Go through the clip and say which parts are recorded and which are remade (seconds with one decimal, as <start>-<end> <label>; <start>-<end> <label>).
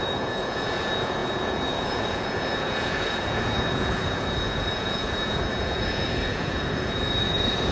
0.0-7.7 remade